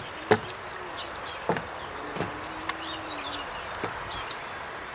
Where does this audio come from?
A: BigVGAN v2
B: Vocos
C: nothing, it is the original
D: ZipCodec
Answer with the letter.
C